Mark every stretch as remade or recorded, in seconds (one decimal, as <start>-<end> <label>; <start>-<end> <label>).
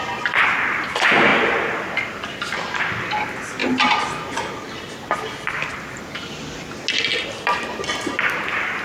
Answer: 0.0-1.3 recorded; 1.3-2.9 remade; 2.9-7.1 recorded; 7.1-8.2 remade; 8.2-8.8 recorded